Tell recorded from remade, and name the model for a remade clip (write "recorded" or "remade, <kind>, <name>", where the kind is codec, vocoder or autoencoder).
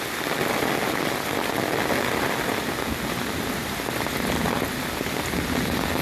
recorded